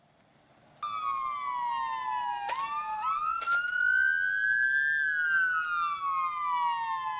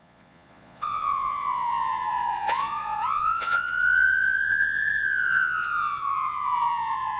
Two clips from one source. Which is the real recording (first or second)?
first